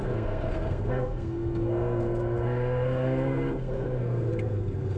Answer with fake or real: fake